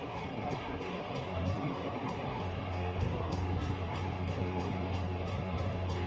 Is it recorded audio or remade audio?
remade